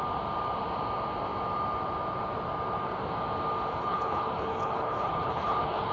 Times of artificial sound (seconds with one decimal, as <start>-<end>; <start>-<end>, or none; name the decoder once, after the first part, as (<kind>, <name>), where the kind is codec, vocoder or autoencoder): 3.8-5.9 (codec, HILCodec)